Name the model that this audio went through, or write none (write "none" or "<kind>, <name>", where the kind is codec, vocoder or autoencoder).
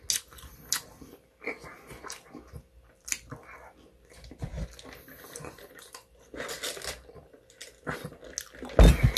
none